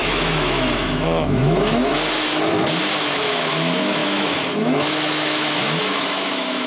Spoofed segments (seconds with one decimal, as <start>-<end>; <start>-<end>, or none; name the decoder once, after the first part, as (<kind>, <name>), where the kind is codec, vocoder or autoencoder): 0.0-1.9 (autoencoder, DAC-VAE); 3.0-6.7